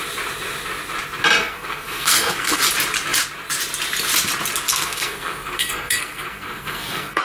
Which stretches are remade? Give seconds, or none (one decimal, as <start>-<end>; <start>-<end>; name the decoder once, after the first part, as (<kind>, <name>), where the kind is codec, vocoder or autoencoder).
1.4-2.6 (codec, SNAC); 4.7-7.2